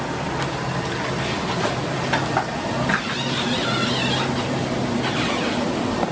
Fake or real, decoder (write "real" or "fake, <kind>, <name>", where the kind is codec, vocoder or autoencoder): real